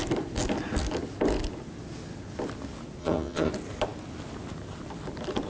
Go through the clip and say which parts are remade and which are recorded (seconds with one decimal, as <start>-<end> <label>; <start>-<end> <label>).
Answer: 0.0-3.0 recorded; 3.0-3.5 remade; 3.5-5.5 recorded